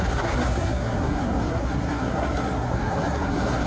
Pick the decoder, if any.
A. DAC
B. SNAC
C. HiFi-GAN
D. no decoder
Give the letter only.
B